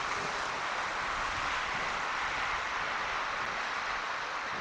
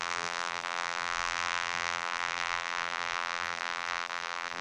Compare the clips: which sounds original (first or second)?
first